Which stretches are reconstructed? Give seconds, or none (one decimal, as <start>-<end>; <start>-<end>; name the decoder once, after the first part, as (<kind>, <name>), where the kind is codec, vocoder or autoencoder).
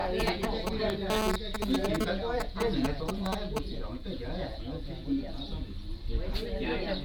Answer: 0.0-0.8 (vocoder, Vocos); 1.5-5.7